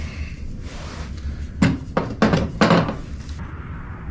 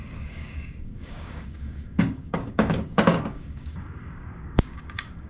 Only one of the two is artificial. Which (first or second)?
second